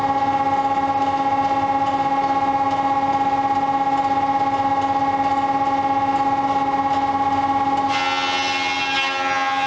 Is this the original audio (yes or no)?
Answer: yes